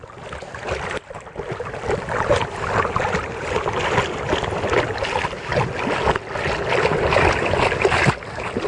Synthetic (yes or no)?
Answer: no